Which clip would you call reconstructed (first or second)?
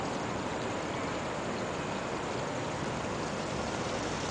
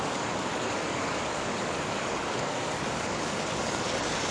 second